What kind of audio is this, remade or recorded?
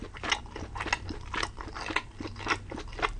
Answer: recorded